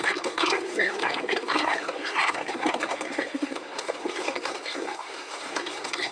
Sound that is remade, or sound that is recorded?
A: remade